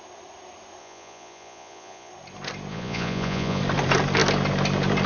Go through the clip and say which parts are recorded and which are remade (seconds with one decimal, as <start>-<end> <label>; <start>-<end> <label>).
0.0-0.8 recorded; 0.8-2.1 remade; 2.1-2.7 recorded; 2.7-3.6 remade; 3.6-5.1 recorded